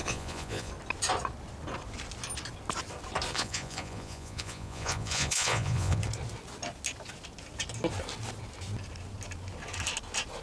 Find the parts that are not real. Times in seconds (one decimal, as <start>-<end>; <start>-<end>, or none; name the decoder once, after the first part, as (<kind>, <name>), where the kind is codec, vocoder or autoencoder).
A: 0.0-0.7 (vocoder, Vocos); 3.3-6.0